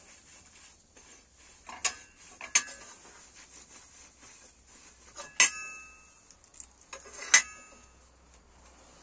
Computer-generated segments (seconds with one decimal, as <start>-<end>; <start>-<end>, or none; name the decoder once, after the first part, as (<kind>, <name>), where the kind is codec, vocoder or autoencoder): none